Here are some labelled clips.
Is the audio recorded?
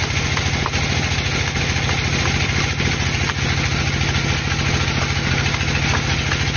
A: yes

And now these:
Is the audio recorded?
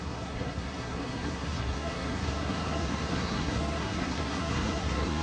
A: no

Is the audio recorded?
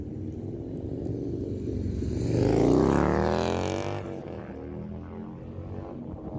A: yes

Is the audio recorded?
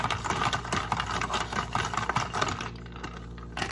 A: yes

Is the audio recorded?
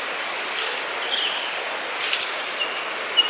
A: yes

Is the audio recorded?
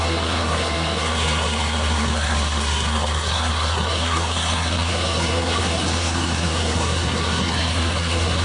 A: no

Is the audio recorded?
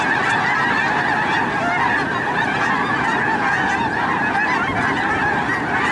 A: yes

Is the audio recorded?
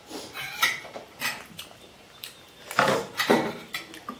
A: no